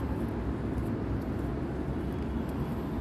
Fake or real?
real